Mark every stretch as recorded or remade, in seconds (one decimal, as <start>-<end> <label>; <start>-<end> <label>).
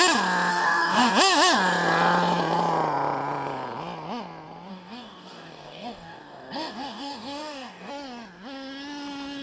0.0-0.5 recorded; 0.5-1.1 remade; 1.1-4.7 recorded; 4.7-7.9 remade; 7.9-9.4 recorded